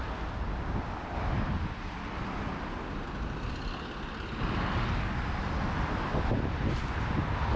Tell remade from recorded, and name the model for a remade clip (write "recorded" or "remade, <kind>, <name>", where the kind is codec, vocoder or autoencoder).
recorded